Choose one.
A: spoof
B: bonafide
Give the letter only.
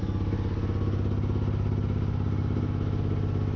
B